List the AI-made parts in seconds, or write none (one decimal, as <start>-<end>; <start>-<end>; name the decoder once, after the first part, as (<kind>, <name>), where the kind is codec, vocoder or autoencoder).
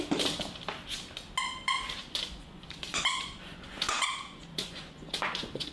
2.0-5.7 (vocoder, Vocos)